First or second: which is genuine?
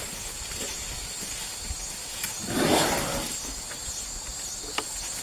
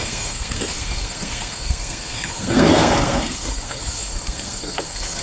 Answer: first